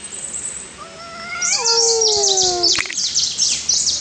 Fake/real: real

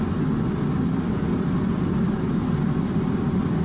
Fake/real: real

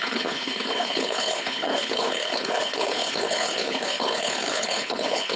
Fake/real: fake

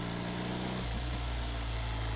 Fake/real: real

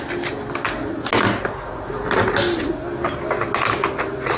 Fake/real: real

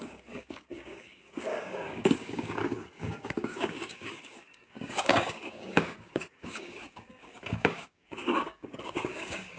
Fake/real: fake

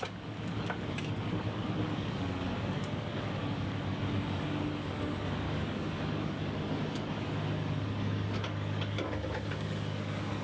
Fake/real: fake